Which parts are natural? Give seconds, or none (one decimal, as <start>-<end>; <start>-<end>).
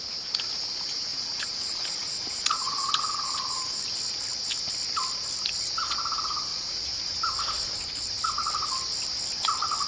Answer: 0.0-1.1; 3.8-6.5; 7.1-9.9